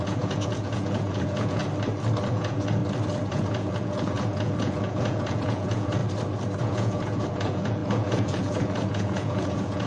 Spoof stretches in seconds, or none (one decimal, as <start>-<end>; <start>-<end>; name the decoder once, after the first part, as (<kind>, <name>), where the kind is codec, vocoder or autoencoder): 0.0-1.6 (vocoder, Vocos); 2.3-2.8; 3.3-6.0; 6.6-9.9